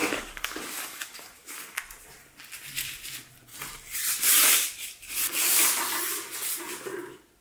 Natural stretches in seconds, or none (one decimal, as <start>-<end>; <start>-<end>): 1.8-7.4